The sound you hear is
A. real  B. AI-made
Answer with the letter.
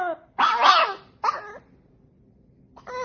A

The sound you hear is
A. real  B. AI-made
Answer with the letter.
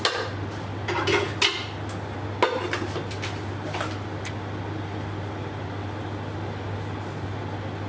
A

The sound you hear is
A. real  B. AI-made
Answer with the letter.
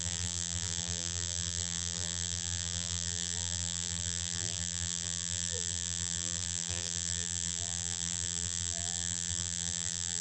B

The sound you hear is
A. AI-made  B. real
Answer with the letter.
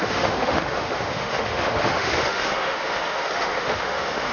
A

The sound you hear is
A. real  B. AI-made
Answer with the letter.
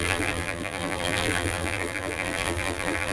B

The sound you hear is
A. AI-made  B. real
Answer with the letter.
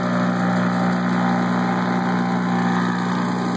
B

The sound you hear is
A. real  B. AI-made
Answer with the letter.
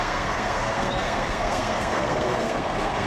B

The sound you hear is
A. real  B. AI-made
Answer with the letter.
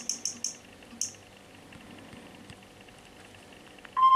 A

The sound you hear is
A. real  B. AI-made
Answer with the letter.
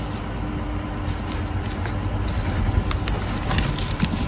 A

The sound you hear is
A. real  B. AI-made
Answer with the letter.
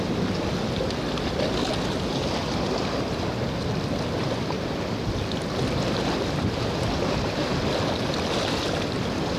A